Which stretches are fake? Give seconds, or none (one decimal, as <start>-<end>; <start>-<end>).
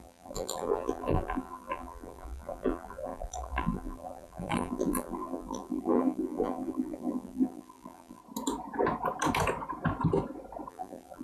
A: 0.0-8.2; 10.7-11.2